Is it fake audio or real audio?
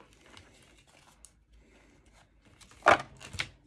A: real